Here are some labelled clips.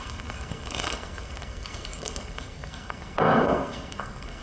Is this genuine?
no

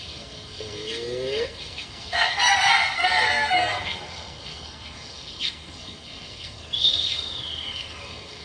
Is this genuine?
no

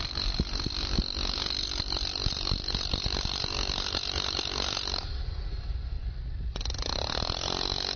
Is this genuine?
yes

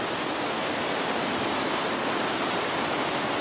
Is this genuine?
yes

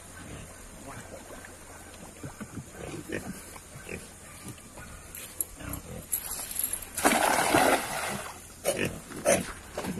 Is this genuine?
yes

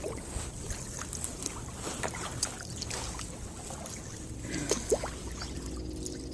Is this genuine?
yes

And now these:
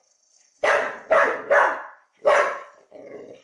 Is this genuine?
yes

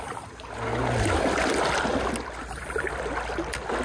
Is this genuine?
yes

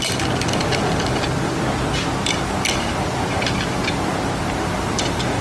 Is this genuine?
yes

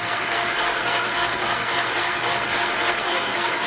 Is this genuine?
no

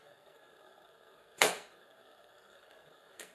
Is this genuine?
no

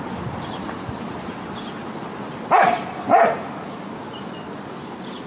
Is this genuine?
yes